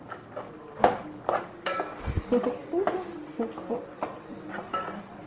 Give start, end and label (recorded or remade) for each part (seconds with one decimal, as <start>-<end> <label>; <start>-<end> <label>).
0.0-5.3 recorded